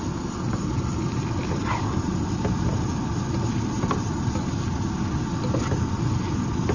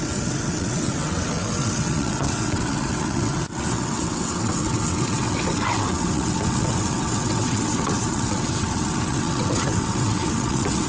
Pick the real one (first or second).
first